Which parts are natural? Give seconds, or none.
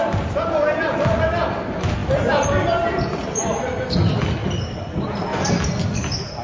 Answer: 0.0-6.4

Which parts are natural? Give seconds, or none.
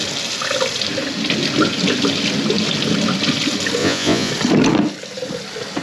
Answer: 0.0-3.8; 4.3-5.8